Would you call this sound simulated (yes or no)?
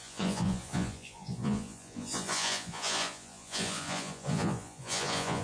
yes